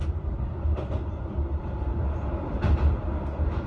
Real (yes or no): no